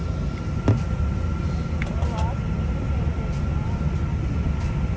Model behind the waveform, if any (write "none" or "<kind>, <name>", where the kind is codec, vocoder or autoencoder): none